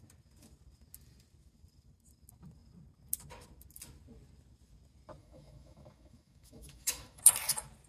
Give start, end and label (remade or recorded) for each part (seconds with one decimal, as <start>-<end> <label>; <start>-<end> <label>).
0.0-5.2 recorded; 5.2-7.2 remade; 7.2-7.9 recorded